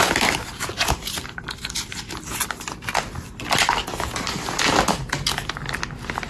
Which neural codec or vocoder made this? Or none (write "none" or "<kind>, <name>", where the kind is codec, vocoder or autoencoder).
none